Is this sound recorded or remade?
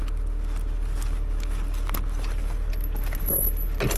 recorded